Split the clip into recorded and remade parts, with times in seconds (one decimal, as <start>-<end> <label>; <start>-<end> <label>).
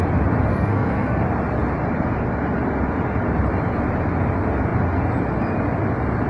0.0-0.5 recorded; 0.5-1.2 remade; 1.2-6.3 recorded